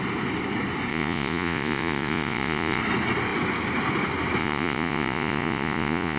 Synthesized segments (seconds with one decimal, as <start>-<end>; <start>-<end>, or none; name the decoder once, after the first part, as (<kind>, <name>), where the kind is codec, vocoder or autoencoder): 0.9-2.8 (vocoder, Vocos); 4.4-6.2